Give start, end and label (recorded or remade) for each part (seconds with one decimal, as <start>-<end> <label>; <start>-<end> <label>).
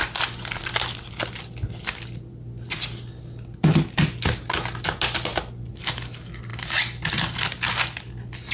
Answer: 0.0-8.5 recorded